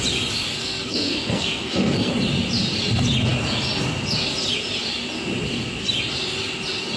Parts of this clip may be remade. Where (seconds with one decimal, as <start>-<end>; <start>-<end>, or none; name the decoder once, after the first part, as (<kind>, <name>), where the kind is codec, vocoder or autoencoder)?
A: 0.6-2.1 (codec, SNAC)